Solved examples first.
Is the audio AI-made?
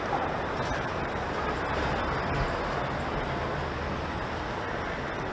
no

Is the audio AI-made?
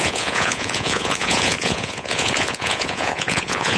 yes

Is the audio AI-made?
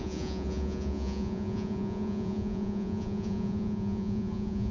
yes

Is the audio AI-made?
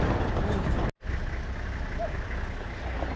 no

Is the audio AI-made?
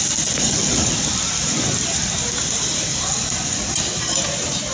no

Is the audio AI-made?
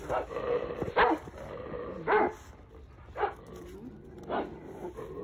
no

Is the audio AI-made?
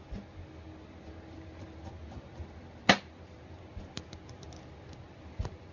no